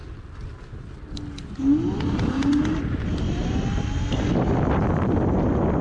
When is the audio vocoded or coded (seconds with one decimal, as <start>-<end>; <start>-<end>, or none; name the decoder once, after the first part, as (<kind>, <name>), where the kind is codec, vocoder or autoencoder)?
none